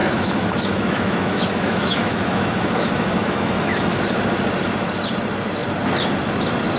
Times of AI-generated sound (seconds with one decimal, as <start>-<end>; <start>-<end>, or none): 0.0-4.0